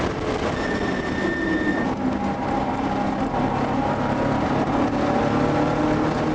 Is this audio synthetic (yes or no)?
no